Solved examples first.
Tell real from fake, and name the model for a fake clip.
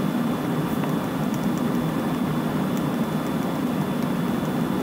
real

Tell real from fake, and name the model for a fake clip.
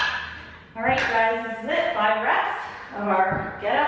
real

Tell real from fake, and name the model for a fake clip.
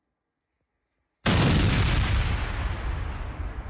real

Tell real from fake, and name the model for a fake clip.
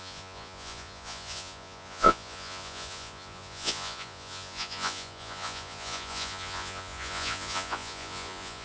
fake, vocoder, Vocos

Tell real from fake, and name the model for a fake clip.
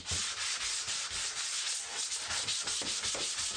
real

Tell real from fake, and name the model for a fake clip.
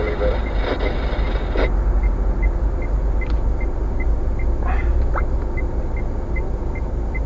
real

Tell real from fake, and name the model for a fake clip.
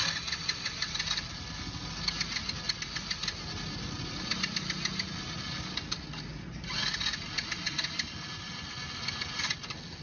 real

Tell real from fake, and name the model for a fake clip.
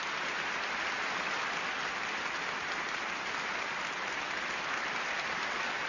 real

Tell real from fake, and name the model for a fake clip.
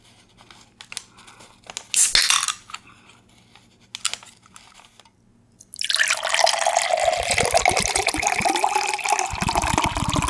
real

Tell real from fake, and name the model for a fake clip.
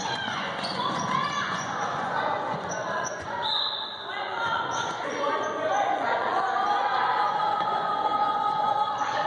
fake, vocoder, Vocos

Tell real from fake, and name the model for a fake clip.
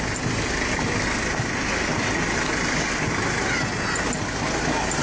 real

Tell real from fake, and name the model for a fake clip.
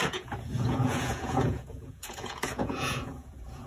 fake, vocoder, Vocos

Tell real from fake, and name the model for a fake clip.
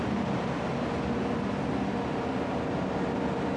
real